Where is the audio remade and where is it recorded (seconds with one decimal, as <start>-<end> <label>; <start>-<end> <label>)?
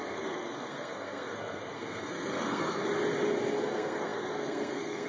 0.0-2.9 remade; 2.9-3.6 recorded; 3.6-5.1 remade